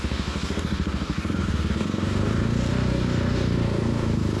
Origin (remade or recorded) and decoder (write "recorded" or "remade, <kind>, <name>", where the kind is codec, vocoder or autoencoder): remade, codec, DAC